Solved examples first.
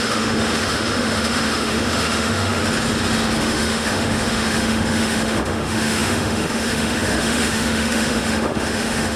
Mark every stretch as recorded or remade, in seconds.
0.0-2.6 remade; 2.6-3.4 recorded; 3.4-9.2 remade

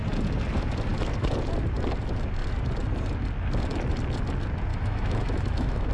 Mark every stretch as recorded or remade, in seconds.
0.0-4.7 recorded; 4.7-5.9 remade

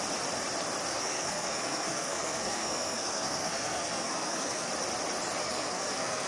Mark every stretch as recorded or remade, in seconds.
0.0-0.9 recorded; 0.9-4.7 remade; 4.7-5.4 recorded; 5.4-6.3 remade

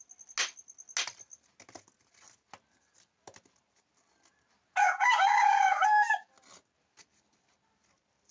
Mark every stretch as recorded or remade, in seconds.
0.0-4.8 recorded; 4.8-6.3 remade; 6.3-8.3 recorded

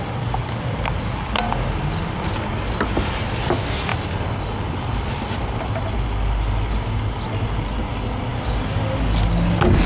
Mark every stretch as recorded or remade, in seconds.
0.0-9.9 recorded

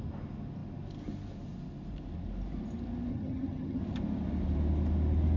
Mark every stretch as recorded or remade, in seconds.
0.0-3.1 recorded; 3.1-3.8 remade; 3.8-5.4 recorded

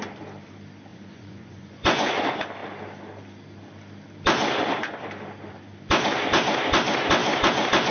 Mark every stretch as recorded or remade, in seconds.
0.0-0.9 recorded; 0.9-2.2 remade; 2.2-7.9 recorded

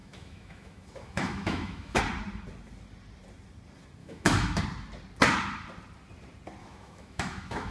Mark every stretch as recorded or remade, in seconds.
0.0-2.0 remade; 2.0-4.0 recorded; 4.0-4.6 remade; 4.6-6.6 recorded; 6.6-7.7 remade